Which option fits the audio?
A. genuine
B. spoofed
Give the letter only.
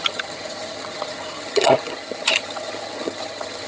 B